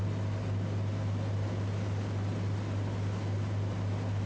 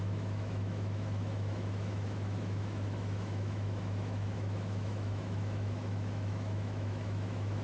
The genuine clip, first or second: first